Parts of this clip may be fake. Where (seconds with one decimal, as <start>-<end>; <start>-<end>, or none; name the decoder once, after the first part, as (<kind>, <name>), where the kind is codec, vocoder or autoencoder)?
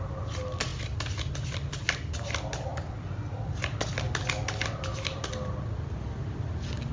none